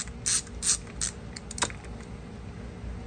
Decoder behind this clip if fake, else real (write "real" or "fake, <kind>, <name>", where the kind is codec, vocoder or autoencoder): real